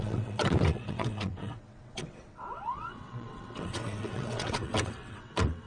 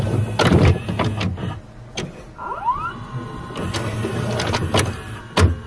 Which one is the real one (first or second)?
second